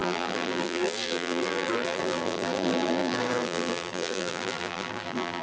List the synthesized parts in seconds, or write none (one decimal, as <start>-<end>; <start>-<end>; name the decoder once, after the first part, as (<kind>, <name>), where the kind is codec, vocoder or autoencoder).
0.0-5.4 (vocoder, BigVGAN v2)